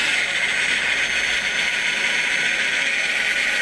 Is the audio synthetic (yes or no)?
no